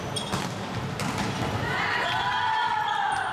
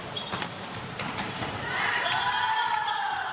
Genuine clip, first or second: first